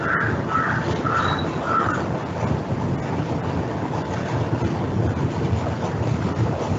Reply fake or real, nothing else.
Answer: real